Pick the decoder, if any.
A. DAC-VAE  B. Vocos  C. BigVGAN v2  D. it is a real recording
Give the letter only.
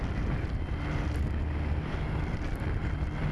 D